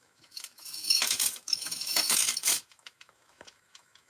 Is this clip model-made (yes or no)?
yes